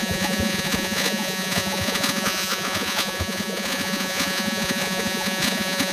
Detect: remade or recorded remade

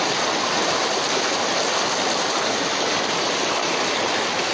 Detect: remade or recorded recorded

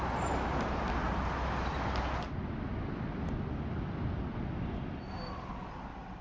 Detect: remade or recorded recorded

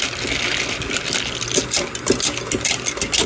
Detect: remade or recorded recorded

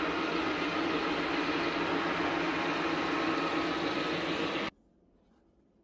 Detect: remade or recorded recorded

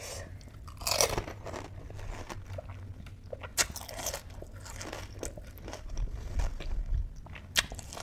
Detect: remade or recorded recorded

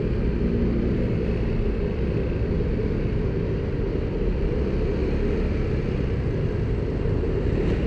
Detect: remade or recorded recorded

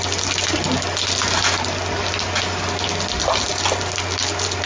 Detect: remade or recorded recorded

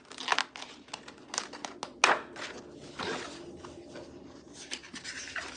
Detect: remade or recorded recorded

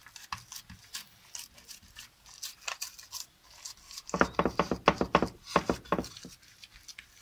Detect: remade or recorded recorded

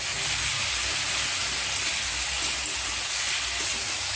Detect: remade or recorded recorded